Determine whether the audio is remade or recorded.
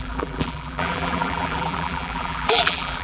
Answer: remade